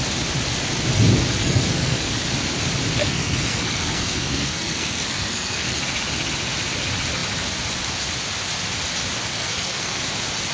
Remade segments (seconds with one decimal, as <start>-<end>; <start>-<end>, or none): 1.4-2.1; 3.0-5.8; 9.3-10.0